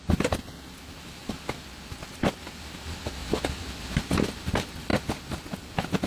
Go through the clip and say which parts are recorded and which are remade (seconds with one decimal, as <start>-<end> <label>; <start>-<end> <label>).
0.0-6.1 recorded